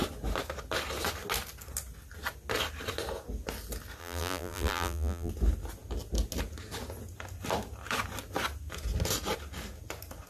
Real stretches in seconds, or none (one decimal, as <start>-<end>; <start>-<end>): 0.0-4.0; 5.3-10.3